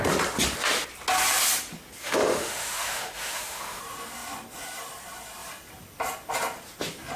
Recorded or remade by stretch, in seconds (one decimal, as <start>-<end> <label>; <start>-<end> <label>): 0.0-2.0 recorded; 2.0-3.8 remade; 3.8-7.2 recorded